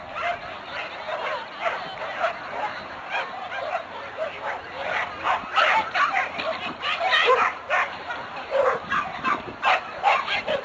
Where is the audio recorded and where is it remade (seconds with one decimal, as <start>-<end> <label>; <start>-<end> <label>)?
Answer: 0.0-10.6 recorded